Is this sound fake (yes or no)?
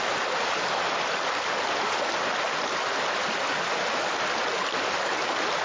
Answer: no